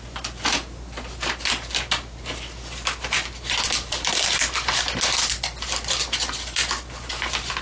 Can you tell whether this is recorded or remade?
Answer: recorded